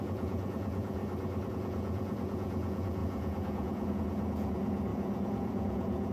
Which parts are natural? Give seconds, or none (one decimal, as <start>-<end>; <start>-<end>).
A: 1.0-1.5